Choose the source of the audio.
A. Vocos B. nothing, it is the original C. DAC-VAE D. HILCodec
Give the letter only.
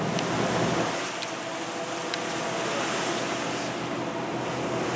B